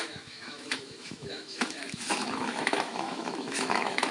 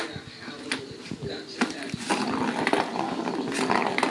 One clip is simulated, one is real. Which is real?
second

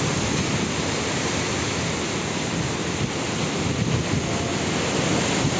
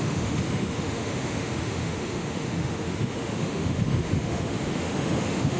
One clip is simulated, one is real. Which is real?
first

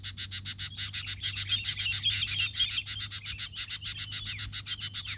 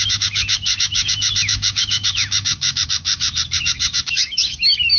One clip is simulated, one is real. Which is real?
first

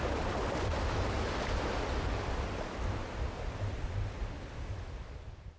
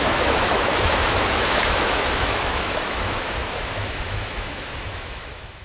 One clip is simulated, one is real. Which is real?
first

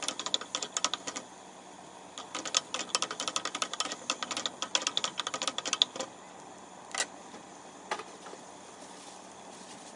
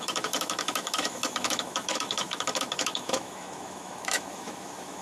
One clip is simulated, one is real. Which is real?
first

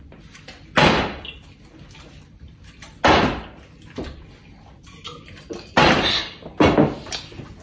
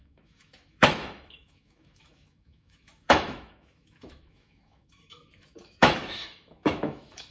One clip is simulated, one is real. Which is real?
first